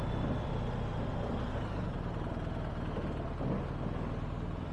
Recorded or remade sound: recorded